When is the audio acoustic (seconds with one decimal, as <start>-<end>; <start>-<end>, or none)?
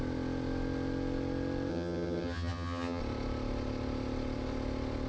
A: 0.0-1.7; 3.0-5.1